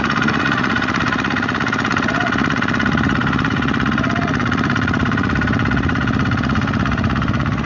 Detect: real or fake fake